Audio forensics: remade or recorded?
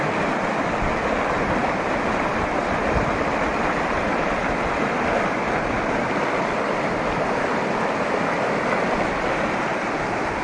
recorded